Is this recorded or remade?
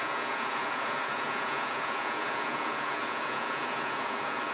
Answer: remade